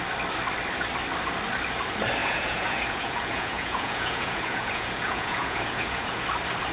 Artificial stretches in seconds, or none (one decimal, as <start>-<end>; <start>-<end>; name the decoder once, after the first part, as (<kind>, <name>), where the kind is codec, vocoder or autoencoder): 2.2-6.2 (vocoder, Vocos)